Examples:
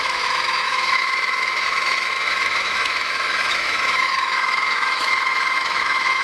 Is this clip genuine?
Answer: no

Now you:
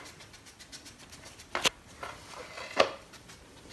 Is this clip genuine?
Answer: yes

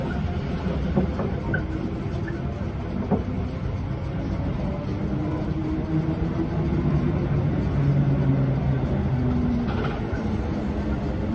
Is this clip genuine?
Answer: yes